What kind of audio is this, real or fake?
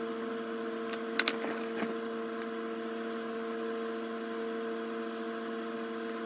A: real